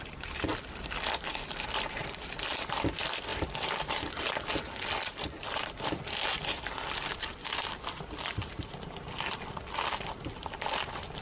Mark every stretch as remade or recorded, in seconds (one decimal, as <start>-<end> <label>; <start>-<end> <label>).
0.0-0.5 recorded; 0.5-2.0 remade; 2.0-3.3 recorded; 3.3-4.1 remade; 4.1-11.2 recorded